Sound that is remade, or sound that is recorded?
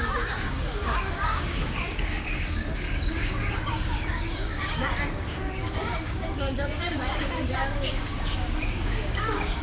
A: remade